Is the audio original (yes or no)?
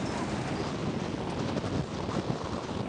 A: yes